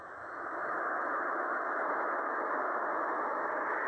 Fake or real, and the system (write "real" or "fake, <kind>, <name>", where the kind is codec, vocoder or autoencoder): fake, autoencoder, DAC-VAE